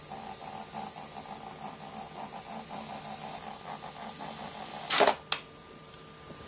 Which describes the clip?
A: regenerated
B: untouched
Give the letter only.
B